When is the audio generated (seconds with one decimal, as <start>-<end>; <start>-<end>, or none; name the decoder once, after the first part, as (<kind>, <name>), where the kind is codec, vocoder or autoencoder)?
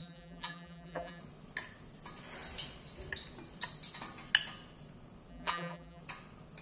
0.0-1.2 (vocoder, BigVGAN v2); 5.3-6.0